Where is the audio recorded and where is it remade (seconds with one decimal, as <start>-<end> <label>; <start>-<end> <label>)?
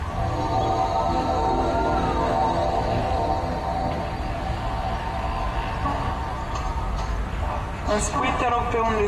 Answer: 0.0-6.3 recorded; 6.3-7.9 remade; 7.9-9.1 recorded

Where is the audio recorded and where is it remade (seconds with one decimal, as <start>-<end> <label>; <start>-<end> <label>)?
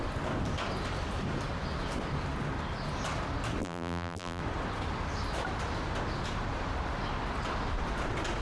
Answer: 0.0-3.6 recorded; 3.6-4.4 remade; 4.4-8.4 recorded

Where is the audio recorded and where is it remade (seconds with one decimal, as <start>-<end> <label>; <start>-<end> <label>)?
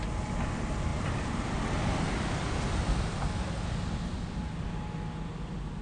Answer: 0.0-0.9 recorded; 0.9-1.5 remade; 1.5-5.8 recorded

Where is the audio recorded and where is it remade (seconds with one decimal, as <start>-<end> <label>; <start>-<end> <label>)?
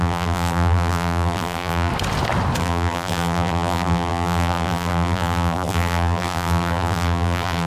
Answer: 0.0-1.9 remade; 1.9-2.6 recorded; 2.6-7.7 remade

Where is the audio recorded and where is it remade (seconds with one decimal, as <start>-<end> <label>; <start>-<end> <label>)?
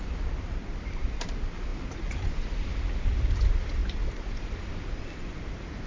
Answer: 0.0-0.6 recorded; 0.6-1.2 remade; 1.2-3.8 recorded; 3.8-4.7 remade; 4.7-5.9 recorded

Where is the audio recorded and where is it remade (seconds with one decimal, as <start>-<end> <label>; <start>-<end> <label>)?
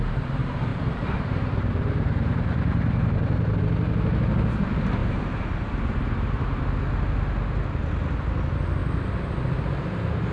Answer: 0.0-0.7 recorded; 0.7-3.6 remade; 3.6-5.0 recorded; 5.0-6.4 remade; 6.4-10.3 recorded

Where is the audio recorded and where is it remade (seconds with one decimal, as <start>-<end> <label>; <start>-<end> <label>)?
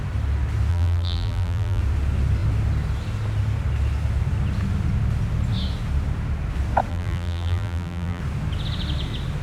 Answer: 0.0-0.7 recorded; 0.7-1.8 remade; 1.8-6.9 recorded; 6.9-8.2 remade; 8.2-9.4 recorded